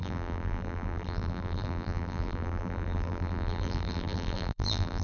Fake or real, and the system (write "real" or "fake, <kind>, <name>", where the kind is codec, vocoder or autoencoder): fake, vocoder, BigVGAN v2